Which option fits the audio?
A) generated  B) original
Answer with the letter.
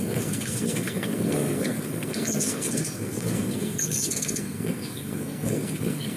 A